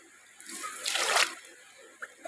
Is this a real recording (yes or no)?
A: yes